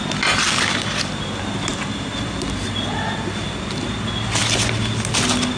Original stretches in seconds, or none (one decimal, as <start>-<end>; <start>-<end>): 0.0-5.6